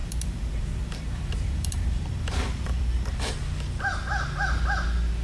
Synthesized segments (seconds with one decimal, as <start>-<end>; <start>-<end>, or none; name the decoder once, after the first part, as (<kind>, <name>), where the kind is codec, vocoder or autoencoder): 0.0-3.1 (vocoder, BigVGAN v2)